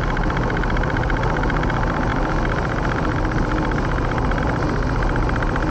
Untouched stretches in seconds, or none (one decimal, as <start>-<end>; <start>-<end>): 0.0-5.7